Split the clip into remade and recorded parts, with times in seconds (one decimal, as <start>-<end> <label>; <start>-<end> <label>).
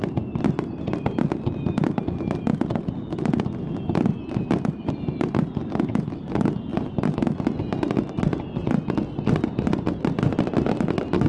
0.0-11.3 recorded